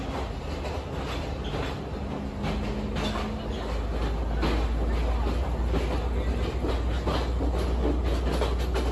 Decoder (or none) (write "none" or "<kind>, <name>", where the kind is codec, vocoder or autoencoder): none